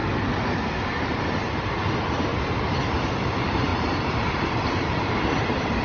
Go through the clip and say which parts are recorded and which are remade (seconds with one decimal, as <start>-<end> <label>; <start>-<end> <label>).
0.0-1.0 recorded; 1.0-2.3 remade; 2.3-2.8 recorded; 2.8-5.8 remade